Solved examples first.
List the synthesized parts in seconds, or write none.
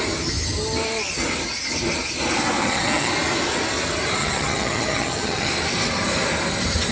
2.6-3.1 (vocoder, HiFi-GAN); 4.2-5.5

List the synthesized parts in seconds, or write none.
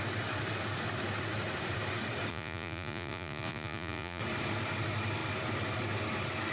2.3-4.2 (vocoder, Vocos)